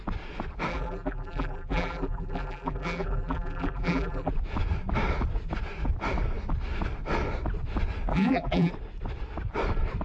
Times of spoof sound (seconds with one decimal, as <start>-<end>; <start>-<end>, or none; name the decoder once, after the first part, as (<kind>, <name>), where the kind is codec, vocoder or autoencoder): 0.7-4.3 (vocoder, BigVGAN v2); 8.1-8.7